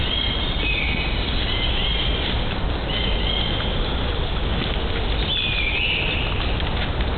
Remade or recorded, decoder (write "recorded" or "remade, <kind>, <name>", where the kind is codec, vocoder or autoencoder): recorded